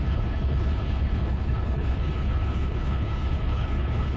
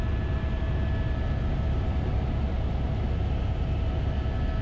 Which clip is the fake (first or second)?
first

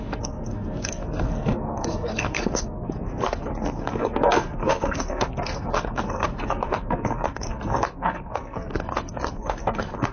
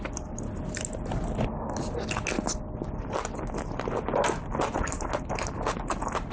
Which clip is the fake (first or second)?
first